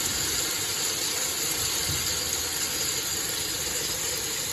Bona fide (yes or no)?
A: yes